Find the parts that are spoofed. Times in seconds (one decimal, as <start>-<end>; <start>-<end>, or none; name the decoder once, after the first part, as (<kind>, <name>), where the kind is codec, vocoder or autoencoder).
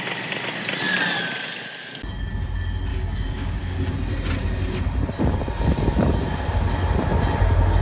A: 2.9-3.9 (codec, DAC)